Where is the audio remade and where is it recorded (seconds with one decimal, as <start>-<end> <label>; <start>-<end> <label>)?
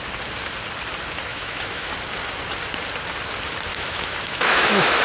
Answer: 0.0-1.3 recorded; 1.3-1.9 remade; 1.9-3.7 recorded; 3.7-5.0 remade